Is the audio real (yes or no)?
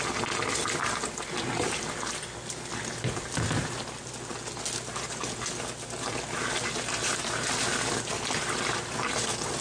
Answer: yes